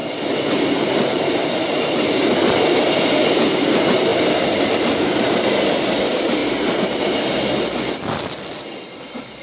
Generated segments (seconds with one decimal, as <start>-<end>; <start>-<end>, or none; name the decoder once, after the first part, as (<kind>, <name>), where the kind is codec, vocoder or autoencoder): none